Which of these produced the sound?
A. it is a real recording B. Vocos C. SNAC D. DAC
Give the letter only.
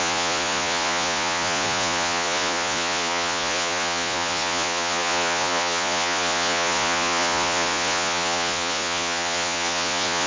B